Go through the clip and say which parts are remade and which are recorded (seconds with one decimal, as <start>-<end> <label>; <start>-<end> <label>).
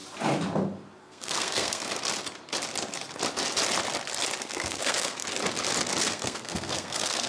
0.0-1.0 recorded; 1.0-1.9 remade; 1.9-4.4 recorded; 4.4-5.2 remade; 5.2-6.0 recorded; 6.0-7.3 remade